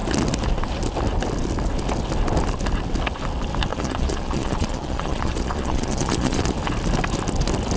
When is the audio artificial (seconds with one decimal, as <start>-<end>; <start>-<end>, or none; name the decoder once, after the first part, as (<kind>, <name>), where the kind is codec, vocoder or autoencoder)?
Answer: 3.7-6.5 (vocoder, Vocos)